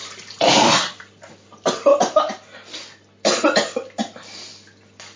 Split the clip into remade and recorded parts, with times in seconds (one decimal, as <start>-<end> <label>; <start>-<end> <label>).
0.0-1.3 remade; 1.3-5.2 recorded